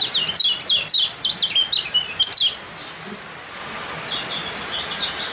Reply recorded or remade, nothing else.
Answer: recorded